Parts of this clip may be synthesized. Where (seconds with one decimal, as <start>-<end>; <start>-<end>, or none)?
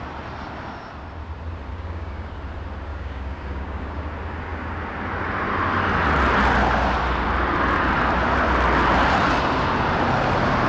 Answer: 1.7-2.3; 2.9-4.1